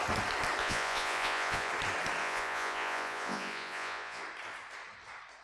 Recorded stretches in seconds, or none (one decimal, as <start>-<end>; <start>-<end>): 0.0-0.6; 1.7-2.2; 4.2-5.4